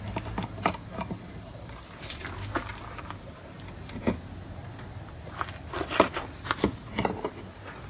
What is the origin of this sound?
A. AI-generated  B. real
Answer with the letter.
B